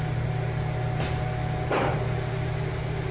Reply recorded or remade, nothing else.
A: recorded